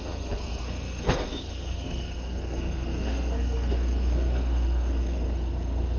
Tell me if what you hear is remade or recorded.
remade